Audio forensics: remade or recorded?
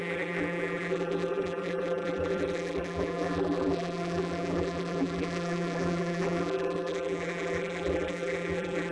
remade